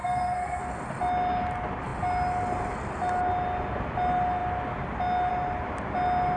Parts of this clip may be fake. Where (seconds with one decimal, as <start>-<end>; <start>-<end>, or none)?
0.0-0.6